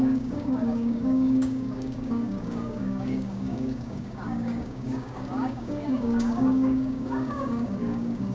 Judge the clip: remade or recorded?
remade